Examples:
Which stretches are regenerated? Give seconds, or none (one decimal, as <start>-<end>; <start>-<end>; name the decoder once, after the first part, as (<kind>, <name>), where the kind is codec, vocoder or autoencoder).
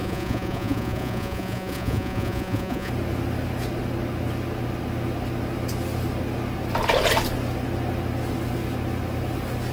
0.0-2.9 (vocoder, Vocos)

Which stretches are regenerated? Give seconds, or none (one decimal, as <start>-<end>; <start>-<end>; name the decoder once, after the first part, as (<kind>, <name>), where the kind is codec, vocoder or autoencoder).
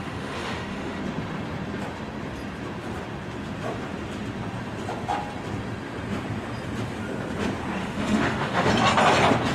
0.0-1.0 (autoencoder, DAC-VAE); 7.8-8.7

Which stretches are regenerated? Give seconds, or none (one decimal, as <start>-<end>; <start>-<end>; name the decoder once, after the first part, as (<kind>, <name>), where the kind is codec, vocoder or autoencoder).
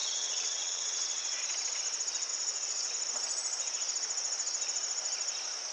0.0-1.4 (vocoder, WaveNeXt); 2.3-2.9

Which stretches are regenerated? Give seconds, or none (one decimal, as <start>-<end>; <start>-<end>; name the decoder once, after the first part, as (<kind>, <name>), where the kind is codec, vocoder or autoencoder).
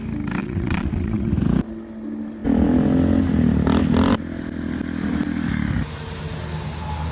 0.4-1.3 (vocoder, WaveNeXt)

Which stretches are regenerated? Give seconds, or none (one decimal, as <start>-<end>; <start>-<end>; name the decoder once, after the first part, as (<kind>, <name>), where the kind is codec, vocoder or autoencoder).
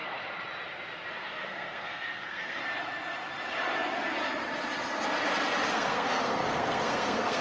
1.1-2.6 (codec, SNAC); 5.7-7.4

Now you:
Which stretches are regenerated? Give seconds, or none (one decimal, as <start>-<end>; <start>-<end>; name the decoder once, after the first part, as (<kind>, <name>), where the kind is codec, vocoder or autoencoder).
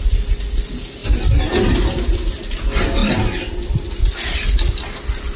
none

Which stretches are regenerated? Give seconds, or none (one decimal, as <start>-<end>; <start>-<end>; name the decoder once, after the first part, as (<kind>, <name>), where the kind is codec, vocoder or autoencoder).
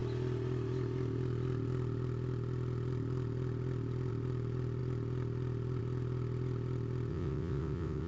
7.1-8.1 (vocoder, WaveNeXt)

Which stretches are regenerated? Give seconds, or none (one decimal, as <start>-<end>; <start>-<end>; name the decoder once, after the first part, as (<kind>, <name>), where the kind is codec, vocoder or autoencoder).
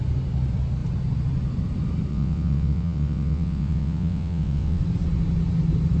2.1-4.8 (vocoder, WaveNeXt)